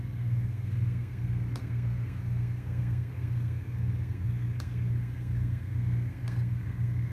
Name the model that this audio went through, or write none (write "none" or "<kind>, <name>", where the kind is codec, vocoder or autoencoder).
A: codec, SNAC